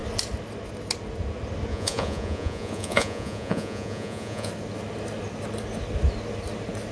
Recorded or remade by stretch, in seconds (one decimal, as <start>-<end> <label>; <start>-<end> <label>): 0.0-1.7 recorded; 1.7-4.5 remade; 4.5-6.9 recorded